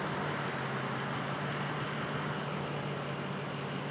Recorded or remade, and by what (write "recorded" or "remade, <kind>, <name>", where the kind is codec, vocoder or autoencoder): recorded